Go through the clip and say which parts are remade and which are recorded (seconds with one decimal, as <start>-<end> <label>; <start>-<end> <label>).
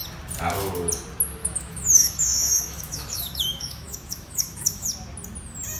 0.0-1.4 recorded; 1.4-4.9 remade; 4.9-5.8 recorded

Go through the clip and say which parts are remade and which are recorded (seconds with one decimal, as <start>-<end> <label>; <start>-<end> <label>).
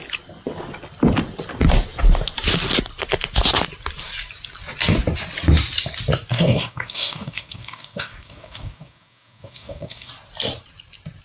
0.0-6.3 recorded; 6.3-10.1 remade; 10.1-11.2 recorded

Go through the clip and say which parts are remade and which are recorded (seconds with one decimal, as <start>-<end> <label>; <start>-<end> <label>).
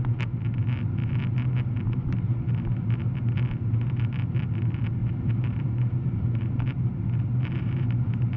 0.0-5.0 recorded; 5.0-6.6 remade; 6.6-7.3 recorded; 7.3-8.4 remade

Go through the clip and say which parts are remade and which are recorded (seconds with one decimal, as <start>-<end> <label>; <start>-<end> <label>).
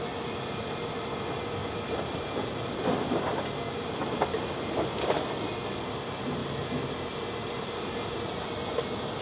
0.0-1.6 recorded; 1.6-3.4 remade; 3.4-9.2 recorded